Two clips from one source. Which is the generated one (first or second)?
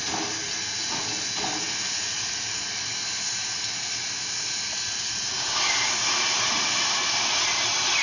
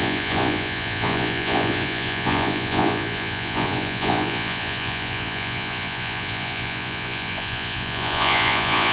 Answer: second